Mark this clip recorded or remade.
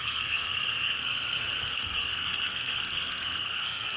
remade